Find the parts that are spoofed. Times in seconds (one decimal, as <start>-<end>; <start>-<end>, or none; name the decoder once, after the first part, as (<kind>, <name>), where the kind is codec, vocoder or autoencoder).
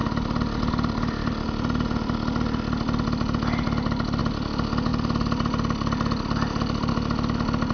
none